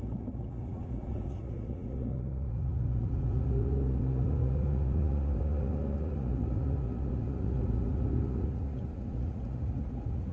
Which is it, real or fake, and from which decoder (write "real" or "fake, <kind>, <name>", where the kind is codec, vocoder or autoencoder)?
fake, vocoder, Vocos